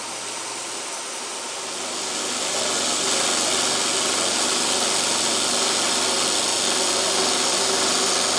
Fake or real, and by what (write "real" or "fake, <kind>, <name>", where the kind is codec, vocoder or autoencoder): real